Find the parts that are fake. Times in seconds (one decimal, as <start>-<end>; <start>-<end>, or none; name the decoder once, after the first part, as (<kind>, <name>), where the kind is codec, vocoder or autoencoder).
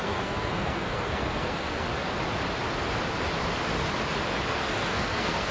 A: 0.0-1.9 (codec, SNAC); 4.5-5.5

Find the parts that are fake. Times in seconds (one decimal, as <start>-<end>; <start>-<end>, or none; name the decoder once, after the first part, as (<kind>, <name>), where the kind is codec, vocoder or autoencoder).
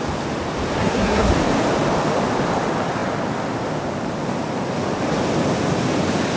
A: 0.8-1.3 (codec, SNAC)